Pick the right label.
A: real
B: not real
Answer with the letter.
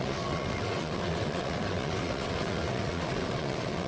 B